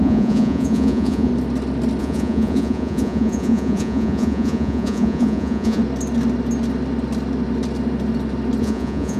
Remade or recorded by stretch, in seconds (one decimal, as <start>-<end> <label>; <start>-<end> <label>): 0.0-1.3 remade; 1.3-2.0 recorded; 2.0-5.8 remade; 5.8-8.6 recorded; 8.6-9.2 remade